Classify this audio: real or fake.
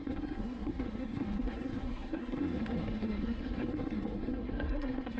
fake